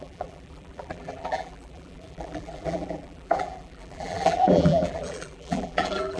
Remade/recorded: remade